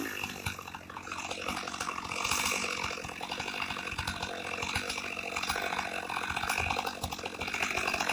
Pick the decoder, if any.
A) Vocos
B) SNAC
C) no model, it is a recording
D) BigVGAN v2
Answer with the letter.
D